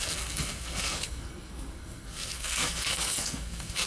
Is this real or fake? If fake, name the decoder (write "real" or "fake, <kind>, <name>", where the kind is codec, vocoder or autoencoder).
fake, codec, SNAC